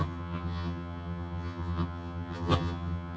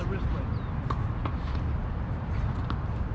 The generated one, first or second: first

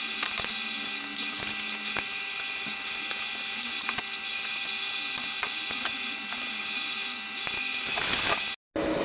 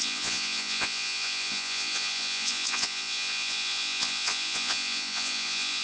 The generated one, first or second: second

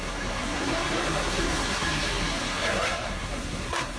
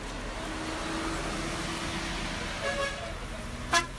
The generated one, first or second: first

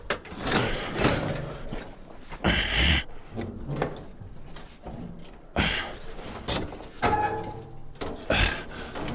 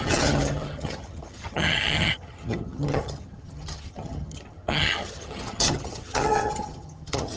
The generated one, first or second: second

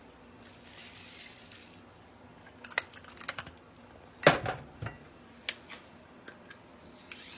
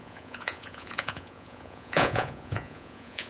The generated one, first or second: second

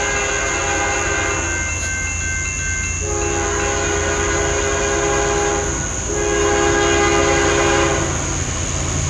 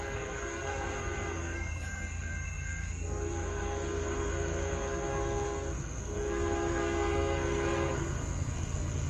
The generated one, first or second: second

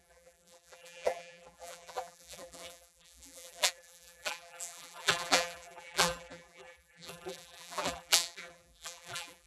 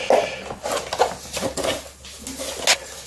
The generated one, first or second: first